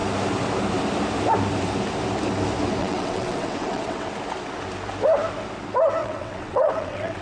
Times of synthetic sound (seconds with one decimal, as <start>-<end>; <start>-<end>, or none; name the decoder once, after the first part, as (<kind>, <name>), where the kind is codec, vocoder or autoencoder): 2.8-4.1 (vocoder, WaveNeXt); 6.0-7.2